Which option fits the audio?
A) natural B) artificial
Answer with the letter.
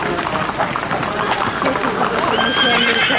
A